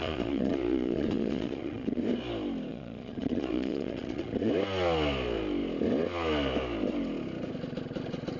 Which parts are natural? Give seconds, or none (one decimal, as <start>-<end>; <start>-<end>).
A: 2.0-2.7; 4.5-8.4